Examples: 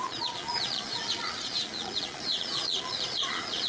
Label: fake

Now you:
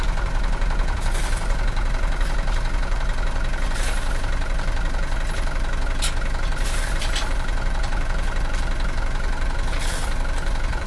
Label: fake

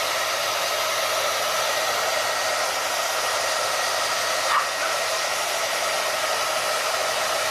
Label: real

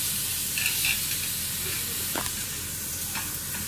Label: real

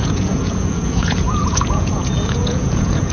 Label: fake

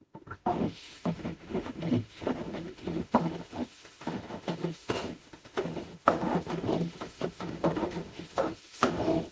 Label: fake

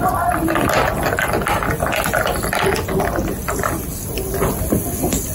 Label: real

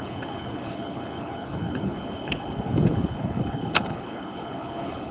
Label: fake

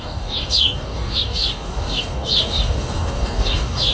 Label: fake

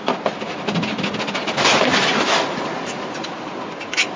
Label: real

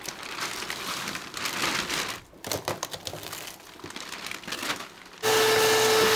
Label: real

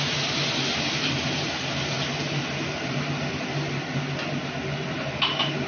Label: real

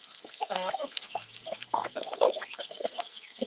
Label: fake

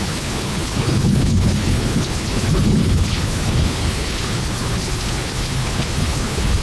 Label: fake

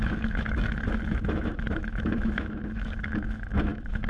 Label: fake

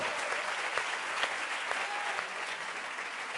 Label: fake